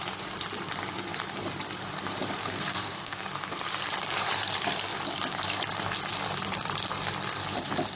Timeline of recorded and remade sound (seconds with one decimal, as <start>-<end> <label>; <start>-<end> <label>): 0.0-2.4 recorded; 2.4-3.2 remade; 3.2-8.0 recorded